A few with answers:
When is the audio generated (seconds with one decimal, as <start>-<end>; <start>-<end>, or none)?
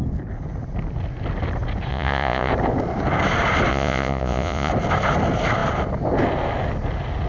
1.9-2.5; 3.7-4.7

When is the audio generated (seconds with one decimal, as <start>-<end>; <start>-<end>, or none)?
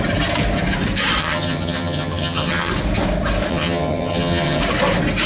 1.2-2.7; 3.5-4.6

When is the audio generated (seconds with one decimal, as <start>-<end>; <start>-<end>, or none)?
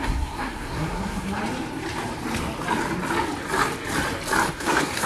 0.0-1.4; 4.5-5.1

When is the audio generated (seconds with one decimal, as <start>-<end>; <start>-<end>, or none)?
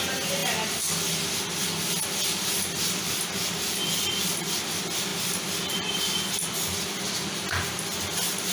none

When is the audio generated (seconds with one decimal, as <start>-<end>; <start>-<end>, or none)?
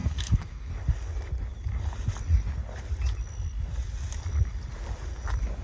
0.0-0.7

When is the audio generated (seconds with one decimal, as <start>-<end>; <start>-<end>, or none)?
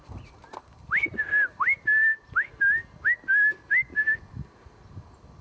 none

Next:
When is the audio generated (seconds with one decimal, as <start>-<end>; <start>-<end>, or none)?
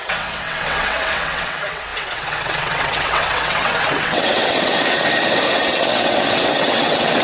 0.0-5.0; 5.5-7.2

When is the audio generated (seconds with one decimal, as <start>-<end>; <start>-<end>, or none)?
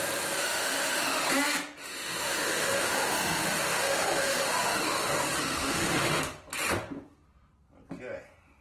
0.4-1.2; 1.8-5.1; 5.5-6.2